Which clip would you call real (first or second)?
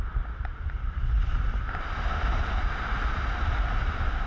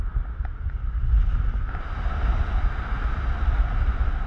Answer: second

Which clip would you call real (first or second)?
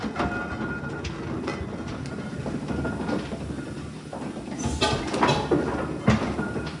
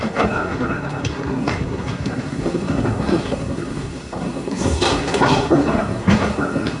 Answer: first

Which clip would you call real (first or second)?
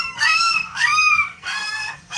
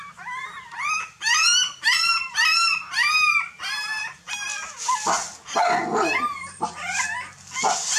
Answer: second